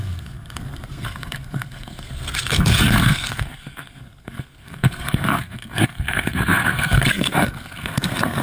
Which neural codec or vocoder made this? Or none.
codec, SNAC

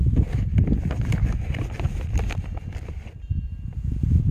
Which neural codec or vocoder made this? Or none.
none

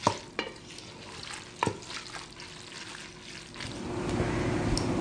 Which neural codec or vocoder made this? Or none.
none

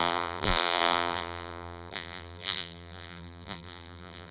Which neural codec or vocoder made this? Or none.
vocoder, BigVGAN v2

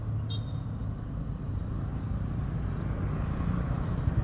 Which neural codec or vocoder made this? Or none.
none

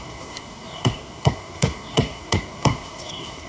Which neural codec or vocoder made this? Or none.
codec, SNAC